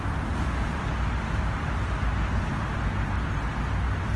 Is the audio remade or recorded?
recorded